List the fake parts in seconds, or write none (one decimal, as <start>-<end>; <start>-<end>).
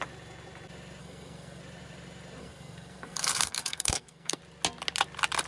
1.0-1.6; 2.4-4.4